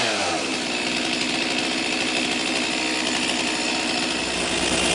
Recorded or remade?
recorded